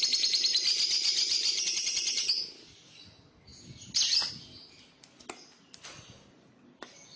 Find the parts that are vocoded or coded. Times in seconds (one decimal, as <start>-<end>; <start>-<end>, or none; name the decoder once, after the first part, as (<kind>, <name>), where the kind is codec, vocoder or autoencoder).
none